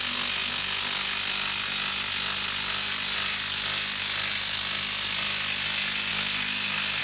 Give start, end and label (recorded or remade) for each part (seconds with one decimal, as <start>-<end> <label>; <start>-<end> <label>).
0.0-6.1 recorded; 6.1-7.0 remade